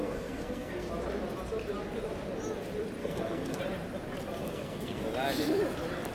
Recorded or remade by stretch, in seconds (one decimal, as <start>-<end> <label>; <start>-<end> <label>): 0.0-0.9 remade; 0.9-3.0 recorded; 3.0-3.6 remade; 3.6-4.4 recorded; 4.4-5.0 remade; 5.0-6.1 recorded